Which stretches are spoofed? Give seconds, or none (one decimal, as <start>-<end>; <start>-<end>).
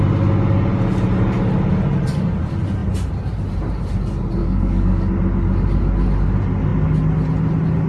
4.4-5.1